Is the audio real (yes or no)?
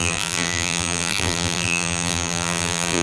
no